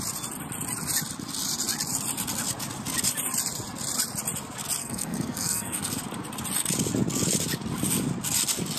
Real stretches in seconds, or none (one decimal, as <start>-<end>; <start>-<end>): 0.0-4.8; 5.9-8.8